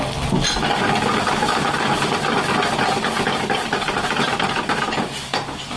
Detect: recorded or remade recorded